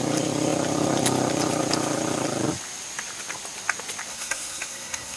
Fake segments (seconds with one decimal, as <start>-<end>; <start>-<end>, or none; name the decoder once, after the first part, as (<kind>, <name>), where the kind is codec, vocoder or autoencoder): 4.1-5.2 (codec, SNAC)